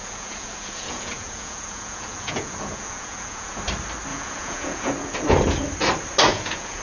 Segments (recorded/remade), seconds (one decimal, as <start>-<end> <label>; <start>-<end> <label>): 0.0-3.6 remade; 3.6-4.1 recorded; 4.1-4.9 remade; 4.9-6.3 recorded; 6.3-6.8 remade